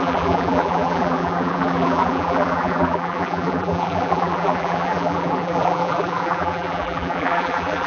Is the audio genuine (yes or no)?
no